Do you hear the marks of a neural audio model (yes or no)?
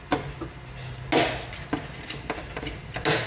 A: no